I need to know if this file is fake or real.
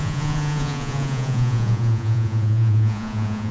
fake